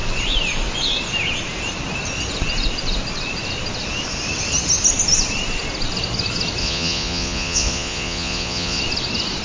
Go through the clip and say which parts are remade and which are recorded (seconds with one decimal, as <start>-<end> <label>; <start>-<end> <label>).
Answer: 0.0-6.6 recorded; 6.6-8.8 remade; 8.8-9.4 recorded